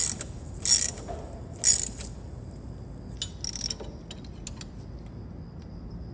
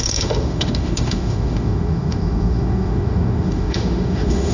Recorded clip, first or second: first